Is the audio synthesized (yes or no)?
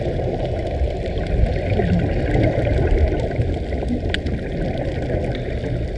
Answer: no